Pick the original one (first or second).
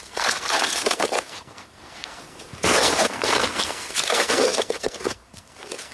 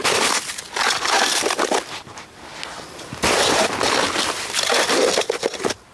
second